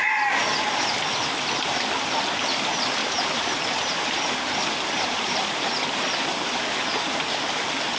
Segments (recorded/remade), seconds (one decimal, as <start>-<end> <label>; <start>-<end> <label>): 0.0-3.0 recorded; 3.0-7.3 remade; 7.3-8.0 recorded